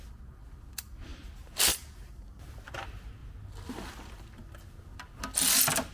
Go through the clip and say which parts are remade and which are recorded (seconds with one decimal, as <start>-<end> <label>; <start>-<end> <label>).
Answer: 0.0-5.9 recorded